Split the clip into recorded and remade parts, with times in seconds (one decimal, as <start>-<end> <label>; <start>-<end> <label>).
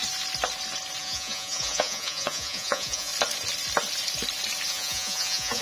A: 0.0-1.0 recorded; 1.0-3.1 remade; 3.1-4.7 recorded; 4.7-5.6 remade